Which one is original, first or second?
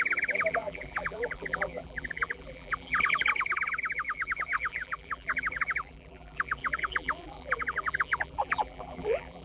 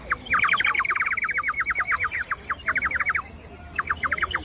second